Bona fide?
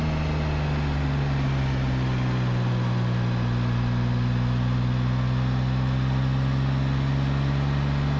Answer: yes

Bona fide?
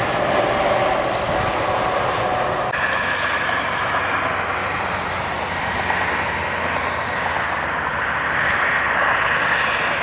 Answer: yes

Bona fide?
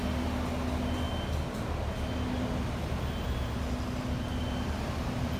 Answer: yes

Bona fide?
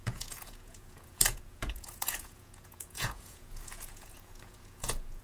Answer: no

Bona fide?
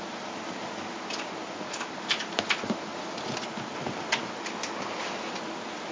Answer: yes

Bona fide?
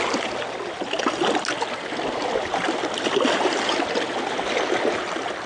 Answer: yes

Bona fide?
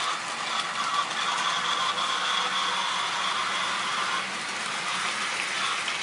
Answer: yes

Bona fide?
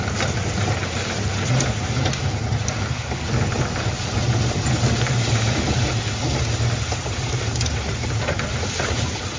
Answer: yes